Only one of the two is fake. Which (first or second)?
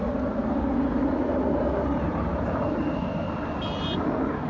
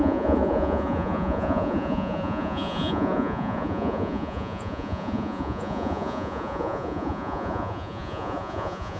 second